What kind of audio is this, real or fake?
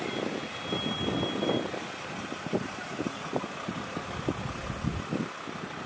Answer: real